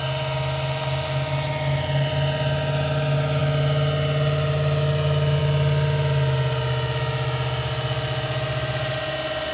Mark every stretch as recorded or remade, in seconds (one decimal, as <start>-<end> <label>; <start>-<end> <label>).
0.0-9.5 recorded